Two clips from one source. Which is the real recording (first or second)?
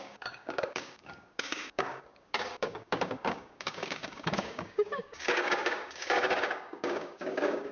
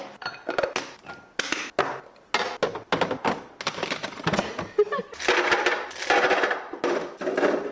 second